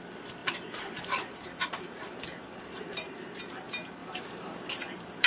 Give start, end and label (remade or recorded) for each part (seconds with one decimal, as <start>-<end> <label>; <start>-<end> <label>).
0.0-0.4 recorded; 0.4-3.4 remade; 3.4-4.0 recorded; 4.0-5.3 remade